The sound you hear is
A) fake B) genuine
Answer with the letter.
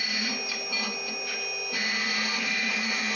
B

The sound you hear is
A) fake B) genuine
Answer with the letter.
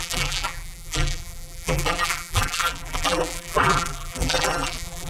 A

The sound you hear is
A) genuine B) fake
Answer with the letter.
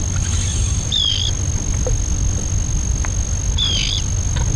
A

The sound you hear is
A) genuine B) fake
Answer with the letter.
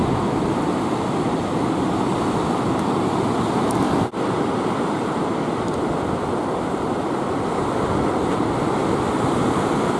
A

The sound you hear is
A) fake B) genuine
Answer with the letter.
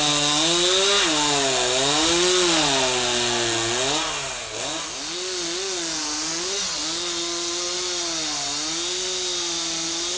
B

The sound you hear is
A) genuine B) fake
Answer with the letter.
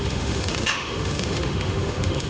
B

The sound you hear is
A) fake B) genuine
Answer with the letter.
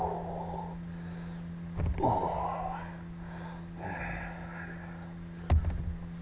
B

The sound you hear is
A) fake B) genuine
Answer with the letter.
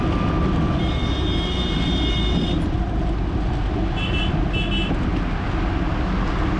B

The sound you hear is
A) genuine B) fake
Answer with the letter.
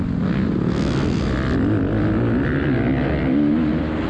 A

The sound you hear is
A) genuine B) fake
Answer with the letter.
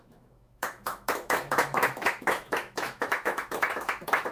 B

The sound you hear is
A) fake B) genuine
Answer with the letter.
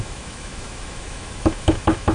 A